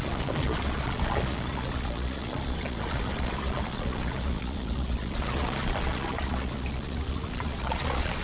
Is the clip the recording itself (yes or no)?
no